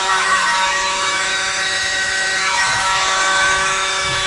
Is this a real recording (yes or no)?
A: no